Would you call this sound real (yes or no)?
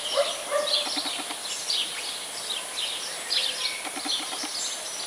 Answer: yes